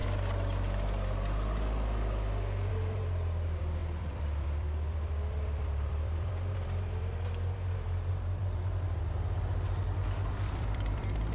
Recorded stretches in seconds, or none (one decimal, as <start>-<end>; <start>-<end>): 0.0-2.7